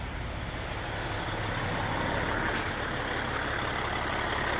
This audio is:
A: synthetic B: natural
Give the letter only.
B